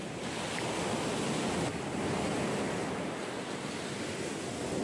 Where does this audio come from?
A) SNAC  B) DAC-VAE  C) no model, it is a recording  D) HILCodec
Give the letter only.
C